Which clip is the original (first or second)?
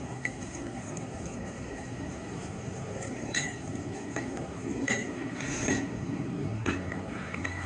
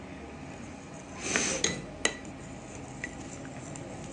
second